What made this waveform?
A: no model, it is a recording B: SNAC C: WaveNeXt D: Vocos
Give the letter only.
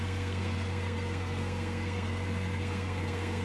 B